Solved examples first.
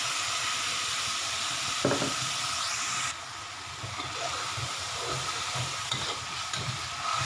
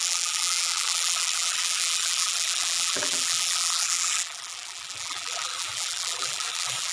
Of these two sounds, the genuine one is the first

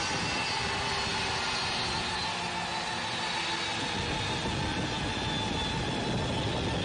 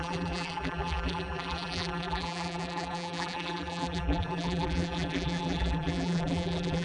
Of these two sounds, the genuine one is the first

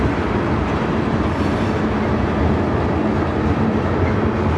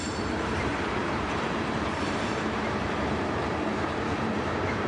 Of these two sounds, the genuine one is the first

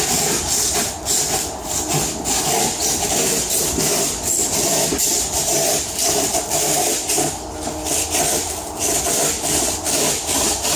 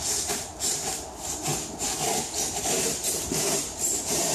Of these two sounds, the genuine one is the first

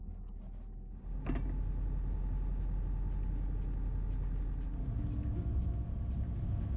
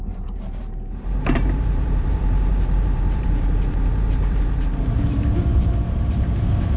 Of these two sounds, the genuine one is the first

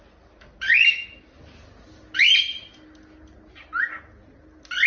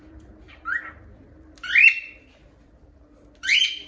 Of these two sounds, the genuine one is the first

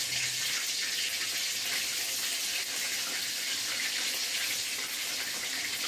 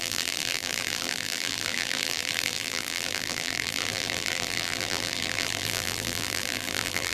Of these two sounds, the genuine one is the first